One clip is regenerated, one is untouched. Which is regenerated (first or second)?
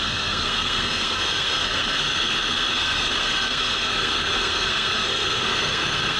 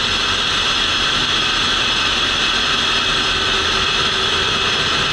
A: first